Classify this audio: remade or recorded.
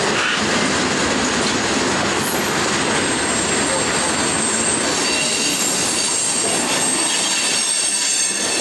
recorded